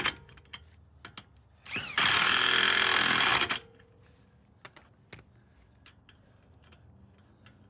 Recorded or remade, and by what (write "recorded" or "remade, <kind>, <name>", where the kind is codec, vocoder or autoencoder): recorded